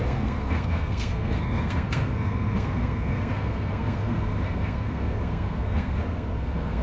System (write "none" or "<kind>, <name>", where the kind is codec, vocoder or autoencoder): codec, SNAC